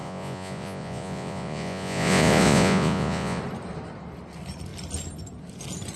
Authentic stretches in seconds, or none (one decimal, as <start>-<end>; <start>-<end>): 3.4-6.0